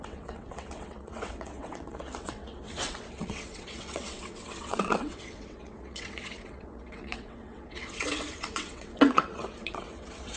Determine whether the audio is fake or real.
fake